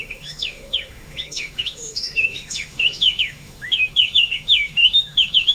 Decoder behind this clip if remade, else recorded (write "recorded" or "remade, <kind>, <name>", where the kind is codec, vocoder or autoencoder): remade, autoencoder, DAC-VAE